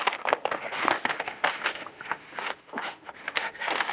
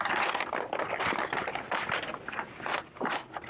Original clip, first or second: second